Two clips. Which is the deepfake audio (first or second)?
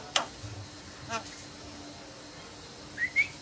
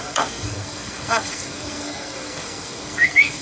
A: second